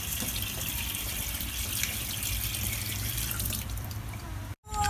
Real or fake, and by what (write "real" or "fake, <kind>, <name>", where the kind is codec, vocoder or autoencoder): fake, vocoder, BigVGAN v2